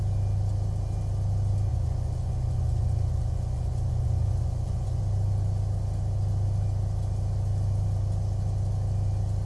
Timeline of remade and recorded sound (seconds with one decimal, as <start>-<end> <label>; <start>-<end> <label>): 0.0-1.7 recorded; 1.7-5.0 remade; 5.0-9.5 recorded